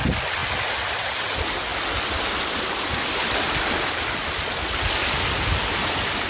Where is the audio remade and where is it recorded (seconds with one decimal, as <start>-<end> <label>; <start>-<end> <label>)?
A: 0.0-1.7 recorded; 1.7-5.5 remade; 5.5-6.3 recorded